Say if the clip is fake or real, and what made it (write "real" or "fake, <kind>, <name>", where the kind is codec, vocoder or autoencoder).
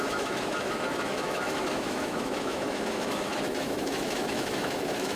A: fake, autoencoder, DAC-VAE